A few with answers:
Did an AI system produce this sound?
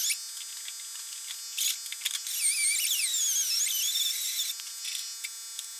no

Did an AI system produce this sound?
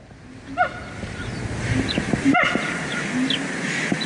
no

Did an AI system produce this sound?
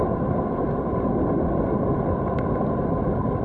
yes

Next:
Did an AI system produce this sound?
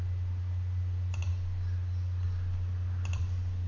no